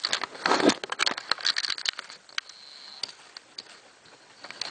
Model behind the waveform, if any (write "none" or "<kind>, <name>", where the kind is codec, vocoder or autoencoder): none